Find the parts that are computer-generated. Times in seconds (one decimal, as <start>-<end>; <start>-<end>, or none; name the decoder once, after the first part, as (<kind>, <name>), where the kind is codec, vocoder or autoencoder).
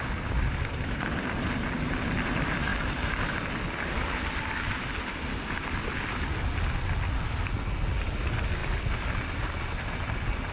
none